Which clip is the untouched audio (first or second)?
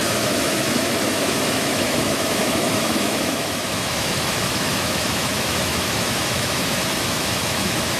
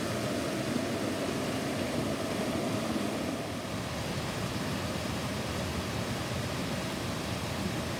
second